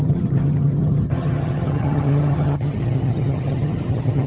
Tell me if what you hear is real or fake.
fake